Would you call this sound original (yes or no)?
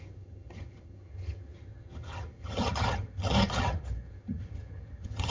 no